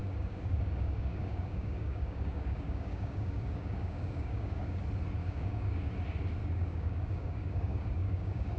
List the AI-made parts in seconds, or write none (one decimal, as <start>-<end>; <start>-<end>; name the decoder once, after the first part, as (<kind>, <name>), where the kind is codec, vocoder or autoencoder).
0.0-4.8 (codec, DAC); 5.2-5.9; 6.4-8.6